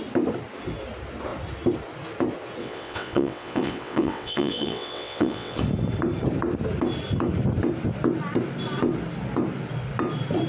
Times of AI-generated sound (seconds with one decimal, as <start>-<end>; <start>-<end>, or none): 2.6-5.6